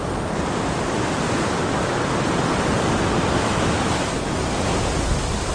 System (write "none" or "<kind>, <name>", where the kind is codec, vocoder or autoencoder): none